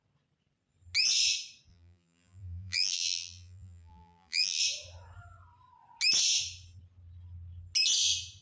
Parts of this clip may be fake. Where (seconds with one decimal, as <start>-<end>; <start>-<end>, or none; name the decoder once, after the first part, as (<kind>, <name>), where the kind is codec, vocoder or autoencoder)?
1.7-4.6 (vocoder, BigVGAN v2)